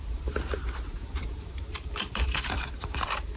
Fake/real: fake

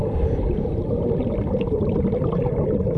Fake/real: fake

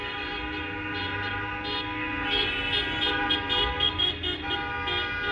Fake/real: real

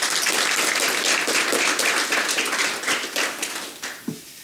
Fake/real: fake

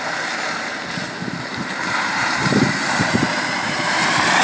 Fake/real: fake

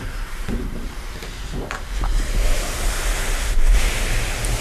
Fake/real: fake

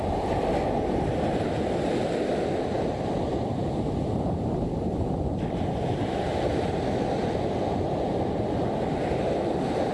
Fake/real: real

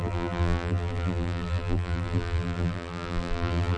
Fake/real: fake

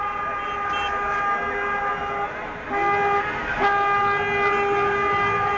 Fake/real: real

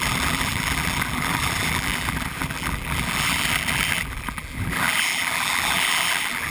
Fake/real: fake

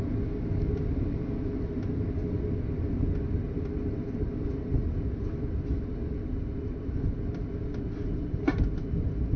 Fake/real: real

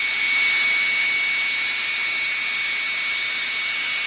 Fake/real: real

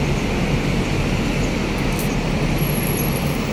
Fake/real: real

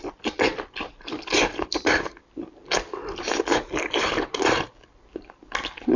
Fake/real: real